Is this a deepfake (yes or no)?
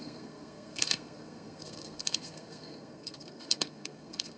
yes